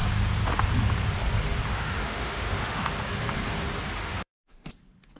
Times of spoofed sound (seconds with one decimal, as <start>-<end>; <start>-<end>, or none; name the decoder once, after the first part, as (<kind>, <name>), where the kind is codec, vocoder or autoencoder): 1.7-2.9 (autoencoder, DAC-VAE); 4.0-4.7